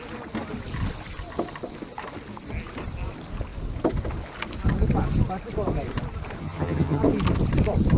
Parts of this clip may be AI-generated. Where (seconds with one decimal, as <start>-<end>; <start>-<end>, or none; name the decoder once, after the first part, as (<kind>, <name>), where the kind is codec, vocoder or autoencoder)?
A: 6.4-7.0 (vocoder, HiFi-GAN)

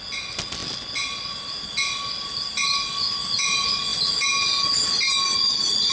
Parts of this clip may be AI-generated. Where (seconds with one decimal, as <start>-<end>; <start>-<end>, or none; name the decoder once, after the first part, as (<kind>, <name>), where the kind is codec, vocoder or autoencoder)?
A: none

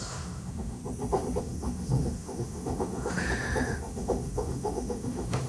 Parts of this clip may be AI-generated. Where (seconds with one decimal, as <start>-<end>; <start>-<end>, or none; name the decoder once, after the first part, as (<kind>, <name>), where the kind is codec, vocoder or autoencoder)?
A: 0.0-0.8 (autoencoder, DAC-VAE); 1.4-5.5

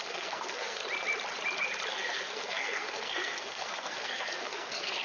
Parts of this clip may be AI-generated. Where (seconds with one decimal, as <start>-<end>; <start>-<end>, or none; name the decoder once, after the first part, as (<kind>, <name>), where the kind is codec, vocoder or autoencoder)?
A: 0.0-0.8 (codec, SNAC); 1.9-5.0

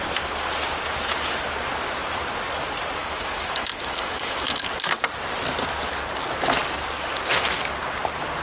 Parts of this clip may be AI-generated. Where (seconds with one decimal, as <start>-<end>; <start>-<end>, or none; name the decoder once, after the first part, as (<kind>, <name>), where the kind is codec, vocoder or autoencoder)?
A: 3.0-4.7 (autoencoder, DAC-VAE)